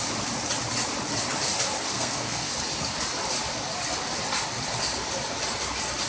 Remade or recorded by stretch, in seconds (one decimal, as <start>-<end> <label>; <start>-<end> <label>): 0.0-1.9 recorded; 1.9-2.5 remade; 2.5-6.1 recorded